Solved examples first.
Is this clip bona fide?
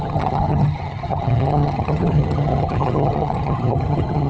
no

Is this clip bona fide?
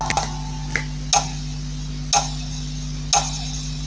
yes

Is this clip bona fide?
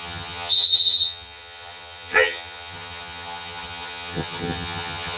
no